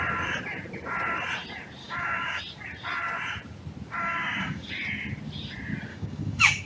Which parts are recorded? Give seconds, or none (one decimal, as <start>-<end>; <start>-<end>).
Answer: 0.0-1.8; 2.4-4.0; 4.7-5.9